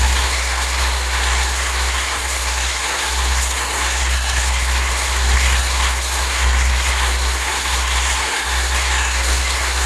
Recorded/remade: remade